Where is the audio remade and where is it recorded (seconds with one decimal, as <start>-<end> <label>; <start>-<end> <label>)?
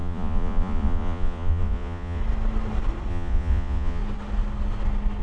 0.0-2.2 remade; 2.2-3.1 recorded; 3.1-4.0 remade; 4.0-5.2 recorded